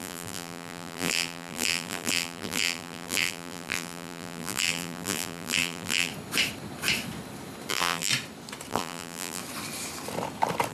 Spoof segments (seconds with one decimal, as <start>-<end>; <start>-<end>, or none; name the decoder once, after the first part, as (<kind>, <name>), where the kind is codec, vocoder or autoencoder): 0.0-6.1 (vocoder, BigVGAN v2); 7.7-8.1; 8.7-9.4